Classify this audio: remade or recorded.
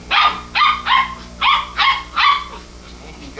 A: recorded